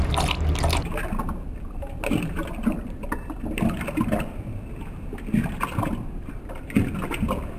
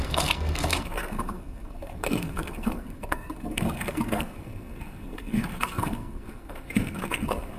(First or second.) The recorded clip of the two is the first